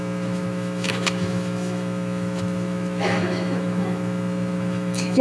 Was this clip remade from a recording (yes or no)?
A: yes